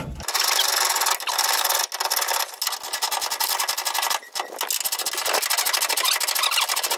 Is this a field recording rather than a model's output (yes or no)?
yes